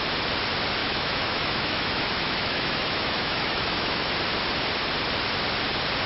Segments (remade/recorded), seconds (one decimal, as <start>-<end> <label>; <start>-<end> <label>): 0.0-0.8 recorded; 0.8-4.1 remade; 4.1-6.1 recorded